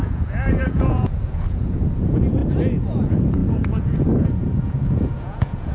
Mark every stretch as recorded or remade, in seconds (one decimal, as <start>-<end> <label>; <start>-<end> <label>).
0.0-5.7 remade